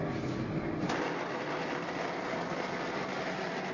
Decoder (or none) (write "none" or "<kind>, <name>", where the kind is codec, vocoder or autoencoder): none